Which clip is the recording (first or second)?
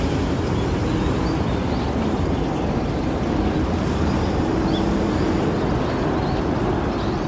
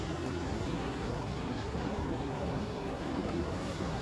first